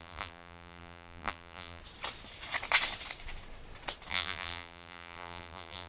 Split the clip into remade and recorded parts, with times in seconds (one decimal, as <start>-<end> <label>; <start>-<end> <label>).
0.0-1.8 remade; 1.8-4.1 recorded; 4.1-5.9 remade